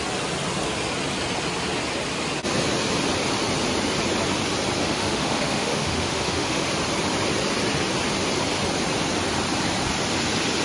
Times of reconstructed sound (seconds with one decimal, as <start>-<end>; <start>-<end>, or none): 4.8-6.7